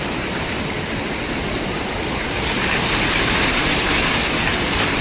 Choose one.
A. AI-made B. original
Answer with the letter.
B